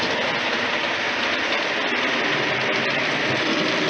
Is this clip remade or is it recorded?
recorded